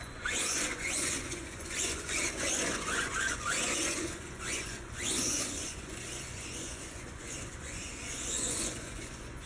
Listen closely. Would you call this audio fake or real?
fake